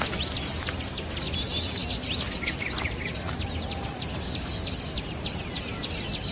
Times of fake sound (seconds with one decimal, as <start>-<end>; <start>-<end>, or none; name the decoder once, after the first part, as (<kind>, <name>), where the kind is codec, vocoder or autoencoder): none